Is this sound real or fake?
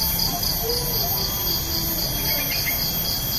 real